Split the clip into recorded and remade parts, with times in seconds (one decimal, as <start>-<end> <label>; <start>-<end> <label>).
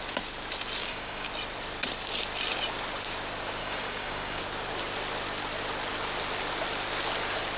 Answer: 0.0-0.8 recorded; 0.8-1.3 remade; 1.3-3.6 recorded; 3.6-4.4 remade; 4.4-7.6 recorded